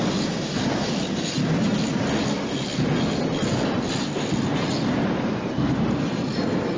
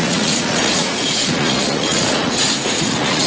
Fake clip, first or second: second